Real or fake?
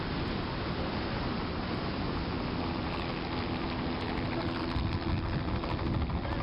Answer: real